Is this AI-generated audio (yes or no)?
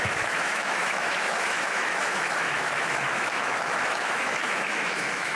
yes